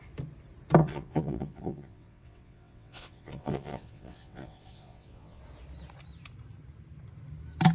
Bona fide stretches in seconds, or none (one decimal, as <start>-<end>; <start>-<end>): 0.0-0.8; 5.4-7.7